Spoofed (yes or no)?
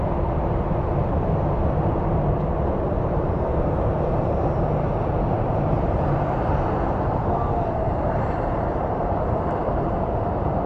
yes